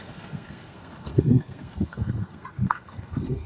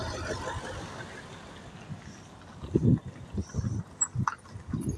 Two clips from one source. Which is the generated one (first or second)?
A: first